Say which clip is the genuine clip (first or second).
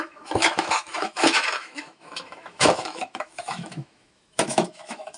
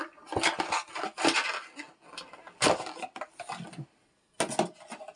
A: second